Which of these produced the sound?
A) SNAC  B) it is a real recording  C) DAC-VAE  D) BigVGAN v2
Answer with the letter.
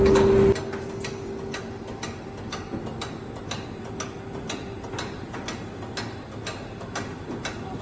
B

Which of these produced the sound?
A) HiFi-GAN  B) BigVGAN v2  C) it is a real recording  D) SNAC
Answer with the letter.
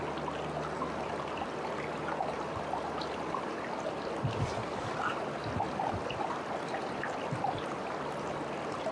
C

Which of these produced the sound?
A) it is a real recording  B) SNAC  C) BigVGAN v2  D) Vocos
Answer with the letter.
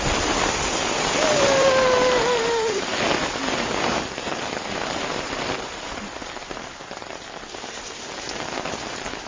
C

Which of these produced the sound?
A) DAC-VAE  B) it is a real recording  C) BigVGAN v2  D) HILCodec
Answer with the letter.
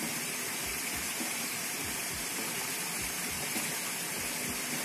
C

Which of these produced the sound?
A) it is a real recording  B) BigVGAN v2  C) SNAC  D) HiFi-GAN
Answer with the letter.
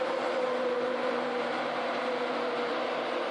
B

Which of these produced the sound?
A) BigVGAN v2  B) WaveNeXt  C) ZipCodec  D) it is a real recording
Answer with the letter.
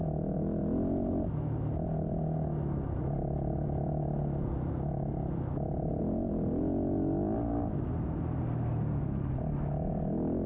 D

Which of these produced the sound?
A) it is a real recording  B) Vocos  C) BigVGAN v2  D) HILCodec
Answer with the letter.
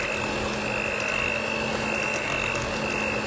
A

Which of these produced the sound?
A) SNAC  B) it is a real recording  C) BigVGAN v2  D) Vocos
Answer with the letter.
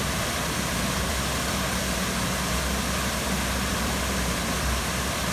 C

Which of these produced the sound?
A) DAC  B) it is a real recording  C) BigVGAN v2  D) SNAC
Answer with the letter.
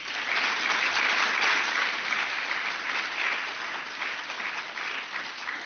B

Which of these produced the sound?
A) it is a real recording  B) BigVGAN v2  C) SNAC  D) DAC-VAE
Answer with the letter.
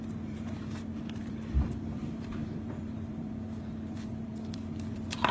B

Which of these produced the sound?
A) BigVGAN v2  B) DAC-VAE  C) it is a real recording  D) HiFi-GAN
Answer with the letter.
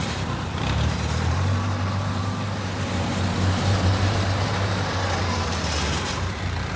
A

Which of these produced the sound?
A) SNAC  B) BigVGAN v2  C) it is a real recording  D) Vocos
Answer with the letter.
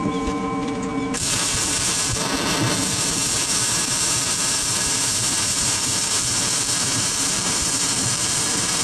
B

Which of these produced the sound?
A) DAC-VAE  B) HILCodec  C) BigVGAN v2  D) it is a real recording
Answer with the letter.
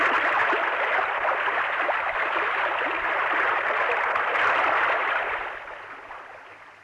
D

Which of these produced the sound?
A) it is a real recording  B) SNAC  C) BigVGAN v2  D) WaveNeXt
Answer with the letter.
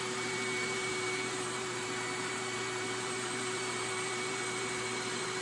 C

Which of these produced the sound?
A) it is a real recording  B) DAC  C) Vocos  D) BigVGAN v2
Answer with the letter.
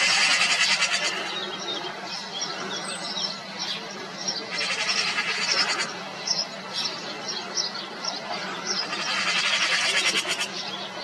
A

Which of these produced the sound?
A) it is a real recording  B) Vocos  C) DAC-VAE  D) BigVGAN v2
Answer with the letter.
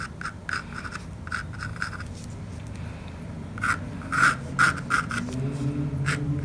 A